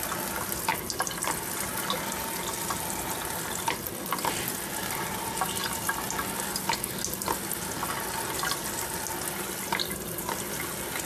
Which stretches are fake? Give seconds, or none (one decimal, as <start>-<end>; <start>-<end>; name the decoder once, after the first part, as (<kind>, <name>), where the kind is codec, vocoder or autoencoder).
none